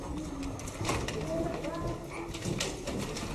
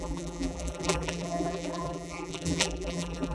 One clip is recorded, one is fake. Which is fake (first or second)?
second